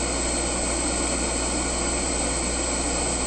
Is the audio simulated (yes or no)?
no